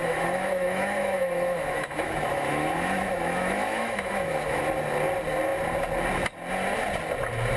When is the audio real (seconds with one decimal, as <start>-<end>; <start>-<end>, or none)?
4.6-7.6